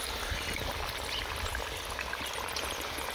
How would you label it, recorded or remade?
recorded